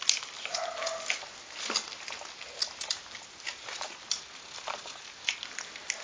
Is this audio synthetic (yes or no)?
no